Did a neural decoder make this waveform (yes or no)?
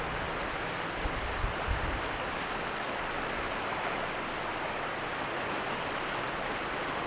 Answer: no